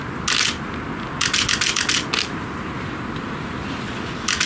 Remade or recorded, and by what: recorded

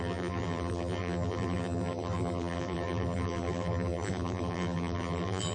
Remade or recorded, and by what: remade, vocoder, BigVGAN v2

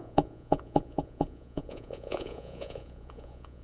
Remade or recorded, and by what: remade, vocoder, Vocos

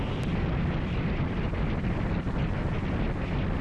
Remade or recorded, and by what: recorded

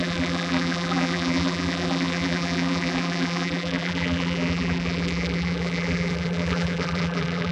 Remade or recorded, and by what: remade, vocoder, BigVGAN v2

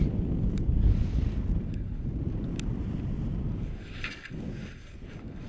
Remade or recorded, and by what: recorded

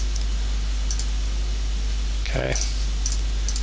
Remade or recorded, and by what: recorded